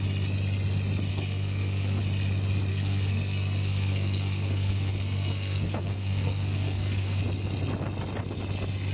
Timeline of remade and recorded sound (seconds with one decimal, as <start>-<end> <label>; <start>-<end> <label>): 0.0-1.1 recorded; 1.1-2.0 remade; 2.0-2.7 recorded; 2.7-7.2 remade; 7.2-8.9 recorded